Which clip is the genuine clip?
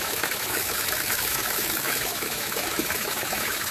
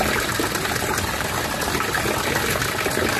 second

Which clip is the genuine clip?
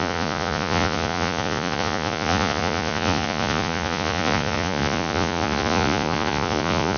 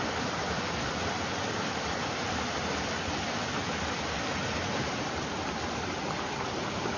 second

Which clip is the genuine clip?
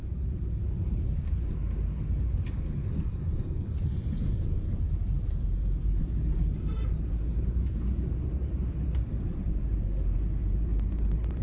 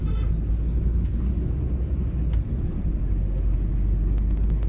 second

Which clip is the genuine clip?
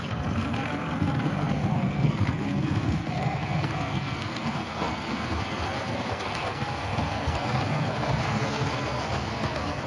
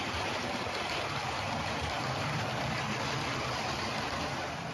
second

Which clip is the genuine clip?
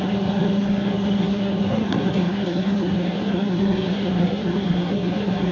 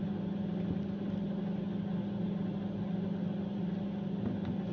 second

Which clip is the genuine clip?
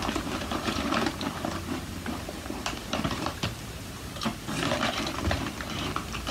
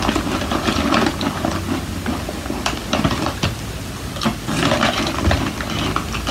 second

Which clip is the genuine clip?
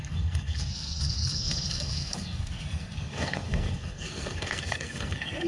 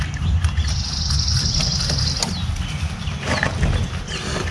second